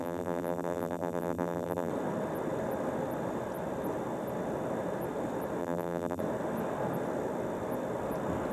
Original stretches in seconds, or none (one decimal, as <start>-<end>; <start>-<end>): 1.9-5.6; 6.2-8.5